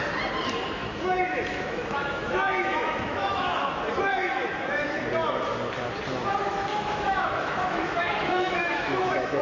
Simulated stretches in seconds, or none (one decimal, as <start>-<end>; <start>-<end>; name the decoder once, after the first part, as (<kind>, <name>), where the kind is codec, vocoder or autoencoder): 0.8-3.8 (autoencoder, DAC-VAE); 4.2-5.0; 6.7-9.4

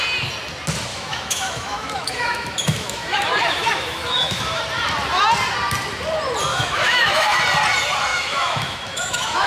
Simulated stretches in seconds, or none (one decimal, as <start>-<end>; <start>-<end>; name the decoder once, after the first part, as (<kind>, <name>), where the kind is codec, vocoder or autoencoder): 0.9-4.6 (autoencoder, DAC-VAE); 6.5-7.4; 8.1-9.5

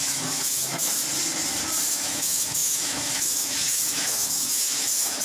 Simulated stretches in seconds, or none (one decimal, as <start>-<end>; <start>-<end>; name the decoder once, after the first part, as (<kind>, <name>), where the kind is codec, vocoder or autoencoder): 0.0-1.0 (autoencoder, DAC-VAE); 1.9-5.2

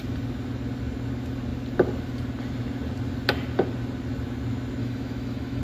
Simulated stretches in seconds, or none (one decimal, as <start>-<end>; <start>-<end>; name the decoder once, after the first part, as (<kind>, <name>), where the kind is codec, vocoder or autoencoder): 4.8-5.6 (autoencoder, DAC-VAE)

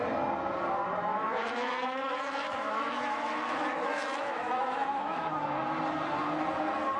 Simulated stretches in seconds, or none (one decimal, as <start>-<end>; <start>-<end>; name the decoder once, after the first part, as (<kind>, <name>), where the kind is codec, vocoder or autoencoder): 1.1-5.3 (autoencoder, DAC-VAE)

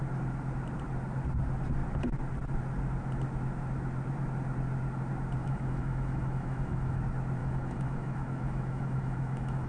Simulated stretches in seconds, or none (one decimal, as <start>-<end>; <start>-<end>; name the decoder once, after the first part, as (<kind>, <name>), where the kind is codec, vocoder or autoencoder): 5.4-7.0 (autoencoder, DAC-VAE); 7.4-9.7